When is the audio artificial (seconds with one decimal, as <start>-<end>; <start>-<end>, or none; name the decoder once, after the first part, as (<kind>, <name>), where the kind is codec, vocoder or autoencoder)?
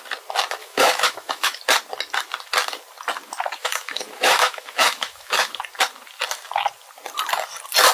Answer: 0.6-1.6 (autoencoder, DAC-VAE); 3.6-5.6